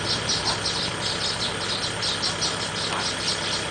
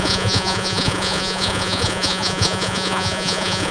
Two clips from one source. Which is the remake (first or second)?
second